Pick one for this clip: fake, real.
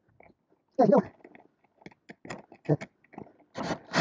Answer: real